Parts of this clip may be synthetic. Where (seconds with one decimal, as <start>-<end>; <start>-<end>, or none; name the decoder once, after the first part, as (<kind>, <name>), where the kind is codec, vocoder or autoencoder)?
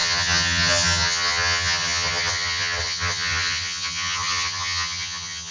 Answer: 0.0-5.5 (vocoder, HiFi-GAN)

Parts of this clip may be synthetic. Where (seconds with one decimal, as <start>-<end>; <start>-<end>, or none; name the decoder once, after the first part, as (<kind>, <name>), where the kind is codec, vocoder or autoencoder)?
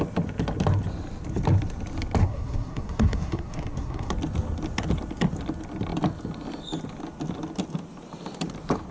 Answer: 2.2-4.1 (codec, SNAC)